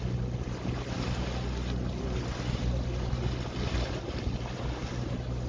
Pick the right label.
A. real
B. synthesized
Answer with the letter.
A